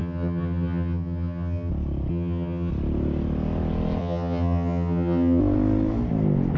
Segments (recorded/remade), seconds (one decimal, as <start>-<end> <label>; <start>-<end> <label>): 0.0-1.7 remade; 1.7-2.1 recorded; 2.1-2.7 remade; 2.7-4.0 recorded; 4.0-5.4 remade; 5.4-6.6 recorded